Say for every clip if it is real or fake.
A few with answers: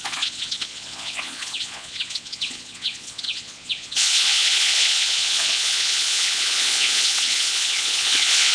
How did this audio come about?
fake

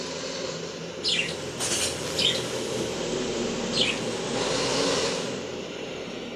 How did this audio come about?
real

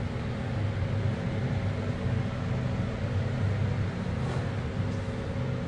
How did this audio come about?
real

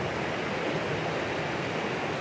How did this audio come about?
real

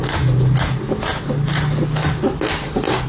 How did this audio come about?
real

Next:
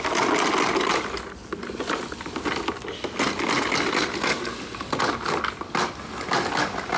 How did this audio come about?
real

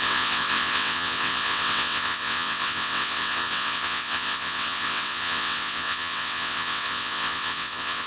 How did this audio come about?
fake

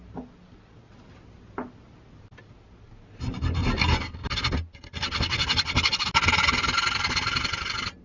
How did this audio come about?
real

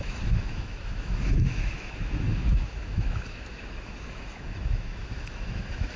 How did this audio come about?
fake